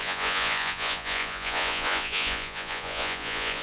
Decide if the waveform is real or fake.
fake